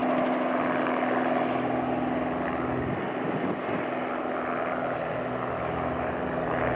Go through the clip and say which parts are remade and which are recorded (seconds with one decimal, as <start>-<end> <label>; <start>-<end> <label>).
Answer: 0.0-6.8 recorded